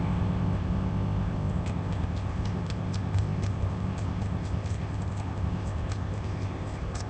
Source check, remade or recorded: remade